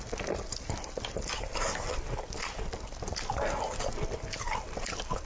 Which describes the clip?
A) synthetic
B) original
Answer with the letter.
A